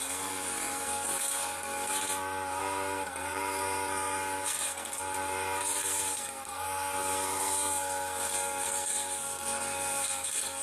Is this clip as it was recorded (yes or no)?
no